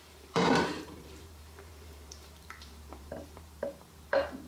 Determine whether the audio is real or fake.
fake